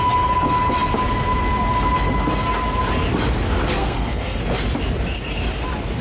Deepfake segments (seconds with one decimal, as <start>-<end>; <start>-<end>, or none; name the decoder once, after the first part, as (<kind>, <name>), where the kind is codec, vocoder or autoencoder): 3.8-4.4 (codec, SNAC)